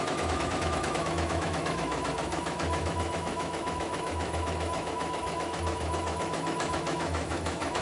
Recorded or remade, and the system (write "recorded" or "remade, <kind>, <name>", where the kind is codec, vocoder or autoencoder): remade, autoencoder, DAC-VAE